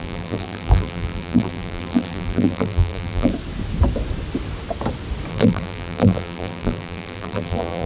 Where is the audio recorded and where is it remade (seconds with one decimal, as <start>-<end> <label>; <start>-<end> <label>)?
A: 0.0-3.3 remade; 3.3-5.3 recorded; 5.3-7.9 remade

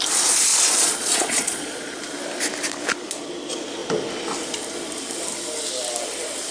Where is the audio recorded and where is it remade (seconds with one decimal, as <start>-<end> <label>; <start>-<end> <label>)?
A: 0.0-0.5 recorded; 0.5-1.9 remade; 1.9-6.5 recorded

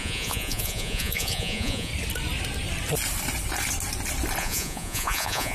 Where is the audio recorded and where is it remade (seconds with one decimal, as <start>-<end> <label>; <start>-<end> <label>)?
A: 0.0-1.9 remade; 1.9-4.4 recorded; 4.4-5.5 remade